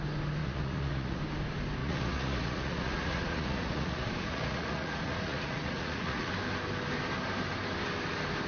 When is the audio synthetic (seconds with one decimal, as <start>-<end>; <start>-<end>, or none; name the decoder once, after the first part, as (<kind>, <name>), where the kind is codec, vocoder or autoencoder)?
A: 0.4-1.2 (vocoder, Vocos); 1.8-6.3